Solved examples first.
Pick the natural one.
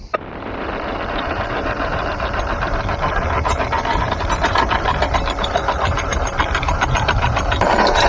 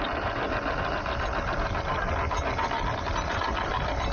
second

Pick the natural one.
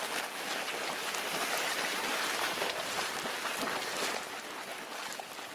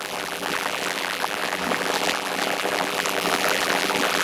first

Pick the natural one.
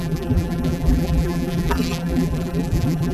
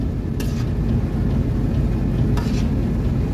second